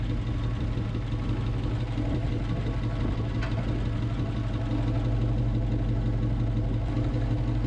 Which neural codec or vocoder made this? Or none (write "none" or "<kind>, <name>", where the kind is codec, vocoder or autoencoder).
none